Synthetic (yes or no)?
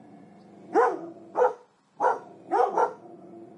no